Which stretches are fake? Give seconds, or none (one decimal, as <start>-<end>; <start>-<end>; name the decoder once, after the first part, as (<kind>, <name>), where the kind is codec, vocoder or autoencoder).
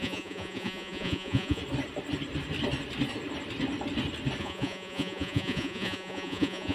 0.0-1.6 (vocoder, Vocos); 4.4-6.7